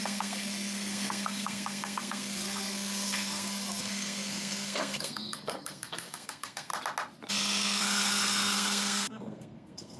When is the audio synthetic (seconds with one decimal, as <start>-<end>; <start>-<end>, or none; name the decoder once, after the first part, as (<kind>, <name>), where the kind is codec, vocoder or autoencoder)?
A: 0.0-6.7 (codec, SNAC); 7.3-10.0